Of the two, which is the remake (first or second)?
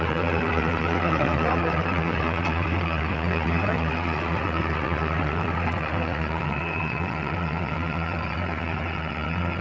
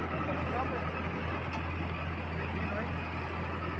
first